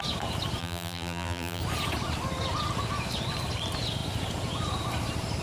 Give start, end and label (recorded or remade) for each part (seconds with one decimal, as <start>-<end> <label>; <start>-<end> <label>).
0.0-0.6 recorded; 0.6-1.6 remade; 1.6-5.4 recorded